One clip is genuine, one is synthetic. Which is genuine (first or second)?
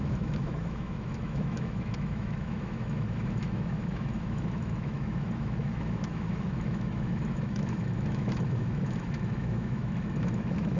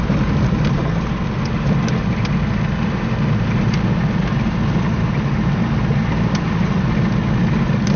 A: second